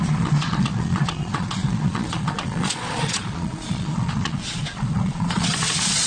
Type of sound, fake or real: fake